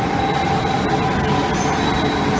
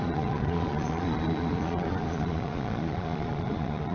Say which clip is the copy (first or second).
second